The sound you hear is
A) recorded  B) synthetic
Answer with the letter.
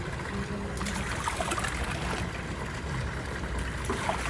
A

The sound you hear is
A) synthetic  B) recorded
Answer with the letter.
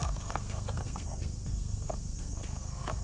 A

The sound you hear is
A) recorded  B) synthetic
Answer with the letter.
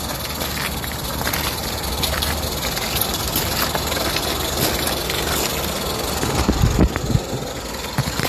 A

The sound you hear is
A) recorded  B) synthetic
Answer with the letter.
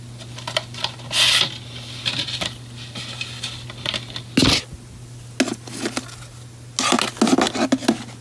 A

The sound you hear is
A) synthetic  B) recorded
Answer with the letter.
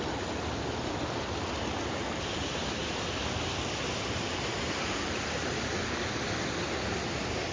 B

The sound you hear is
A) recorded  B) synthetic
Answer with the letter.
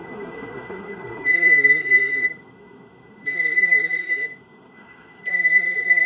B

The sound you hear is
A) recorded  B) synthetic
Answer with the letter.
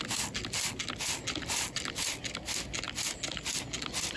A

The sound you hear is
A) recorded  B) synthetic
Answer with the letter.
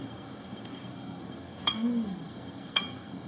B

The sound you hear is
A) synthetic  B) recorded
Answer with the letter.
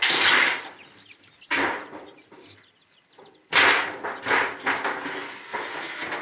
B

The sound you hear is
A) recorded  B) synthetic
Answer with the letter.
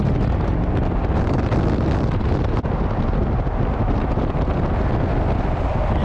A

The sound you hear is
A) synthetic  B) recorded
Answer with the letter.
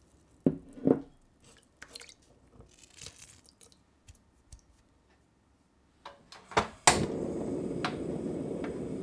B